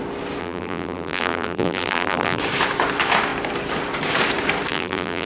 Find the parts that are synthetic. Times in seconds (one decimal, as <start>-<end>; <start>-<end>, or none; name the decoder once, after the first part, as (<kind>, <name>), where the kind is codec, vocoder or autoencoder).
0.4-2.4 (vocoder, BigVGAN v2); 4.7-5.3